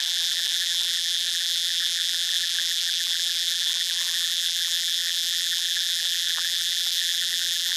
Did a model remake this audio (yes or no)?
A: yes